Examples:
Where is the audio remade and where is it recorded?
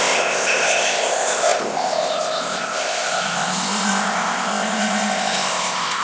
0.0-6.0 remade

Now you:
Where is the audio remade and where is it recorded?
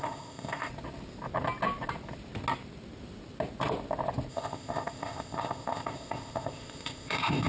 0.0-0.7 remade; 0.7-4.3 recorded; 4.3-7.5 remade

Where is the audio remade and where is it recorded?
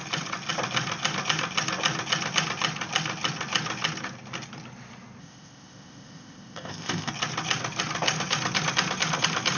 0.0-5.2 recorded; 5.2-7.1 remade; 7.1-9.6 recorded